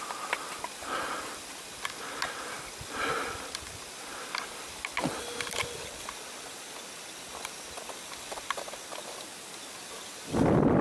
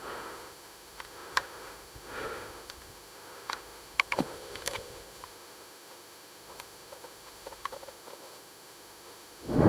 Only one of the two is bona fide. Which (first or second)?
first